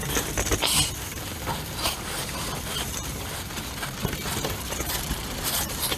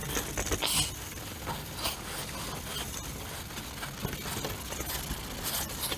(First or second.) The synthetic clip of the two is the first